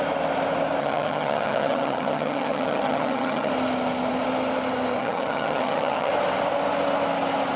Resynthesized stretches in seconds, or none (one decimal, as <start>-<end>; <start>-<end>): 0.8-3.5; 5.0-6.1